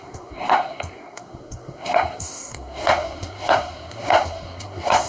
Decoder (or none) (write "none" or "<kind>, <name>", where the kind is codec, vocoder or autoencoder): codec, SNAC